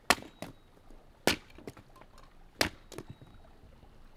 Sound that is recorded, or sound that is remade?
recorded